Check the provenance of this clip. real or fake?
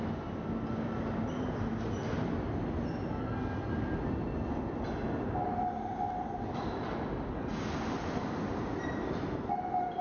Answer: real